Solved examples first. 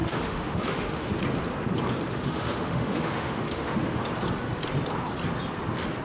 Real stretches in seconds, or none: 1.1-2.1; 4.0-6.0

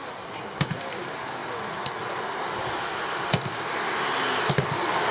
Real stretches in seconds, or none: 0.0-5.1

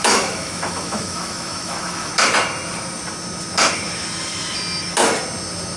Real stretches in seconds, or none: 2.1-5.8

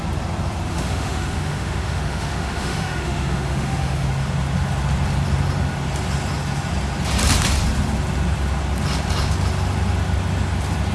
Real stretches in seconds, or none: 0.0-0.7; 4.1-10.9

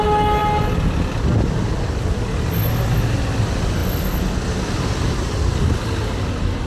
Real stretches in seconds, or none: 0.0-6.7

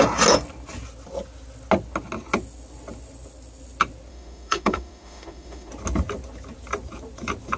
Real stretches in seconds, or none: 0.0-4.1; 5.7-7.6

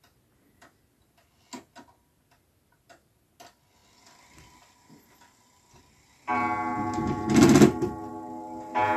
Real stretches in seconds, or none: 0.0-9.0

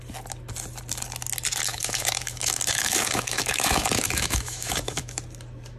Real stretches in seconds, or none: 0.0-1.7; 5.2-5.8